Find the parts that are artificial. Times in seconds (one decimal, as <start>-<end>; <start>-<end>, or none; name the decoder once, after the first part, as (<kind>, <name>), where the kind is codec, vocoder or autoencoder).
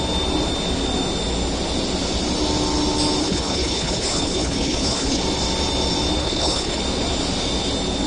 3.2-5.2 (codec, HILCodec); 6.2-6.8